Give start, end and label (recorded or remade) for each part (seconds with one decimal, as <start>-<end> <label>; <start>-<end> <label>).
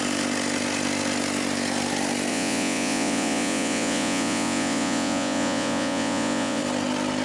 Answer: 0.0-2.3 recorded; 2.3-6.6 remade; 6.6-7.2 recorded